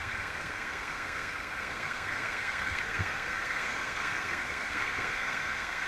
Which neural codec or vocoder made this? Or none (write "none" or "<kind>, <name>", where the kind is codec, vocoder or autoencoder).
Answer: codec, SNAC